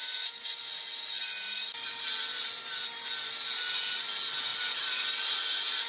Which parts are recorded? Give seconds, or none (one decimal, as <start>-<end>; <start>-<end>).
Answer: 0.0-5.9